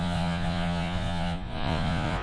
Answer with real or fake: fake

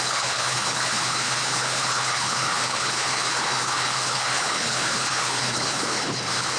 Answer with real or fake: fake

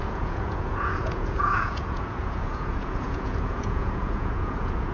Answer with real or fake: fake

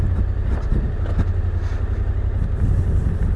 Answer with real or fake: real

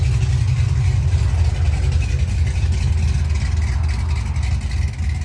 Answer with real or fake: real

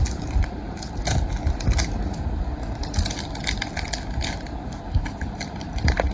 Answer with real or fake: real